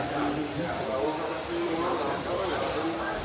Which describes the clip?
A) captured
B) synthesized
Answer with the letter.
A